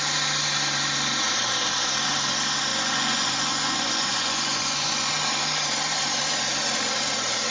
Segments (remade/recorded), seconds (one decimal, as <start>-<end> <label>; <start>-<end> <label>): 0.0-2.7 recorded; 2.7-5.1 remade; 5.1-7.5 recorded